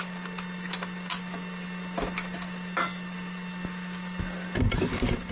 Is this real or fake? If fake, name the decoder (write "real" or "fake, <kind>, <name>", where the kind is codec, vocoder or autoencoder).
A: real